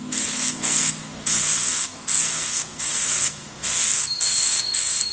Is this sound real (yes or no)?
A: no